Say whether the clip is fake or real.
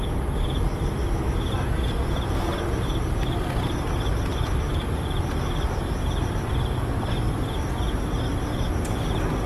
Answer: real